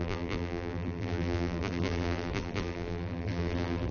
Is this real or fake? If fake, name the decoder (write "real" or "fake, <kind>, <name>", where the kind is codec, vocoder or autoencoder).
fake, vocoder, BigVGAN v2